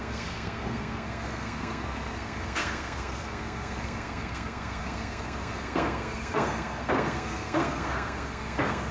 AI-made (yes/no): yes